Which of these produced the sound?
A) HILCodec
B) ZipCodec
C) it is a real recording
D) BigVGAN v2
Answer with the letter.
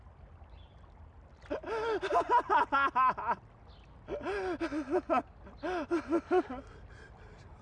C